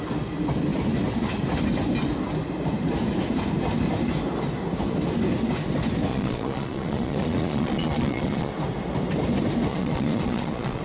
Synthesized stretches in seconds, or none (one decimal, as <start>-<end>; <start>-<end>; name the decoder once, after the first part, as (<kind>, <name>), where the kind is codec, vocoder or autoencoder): 6.1-8.5 (vocoder, Vocos); 9.7-10.8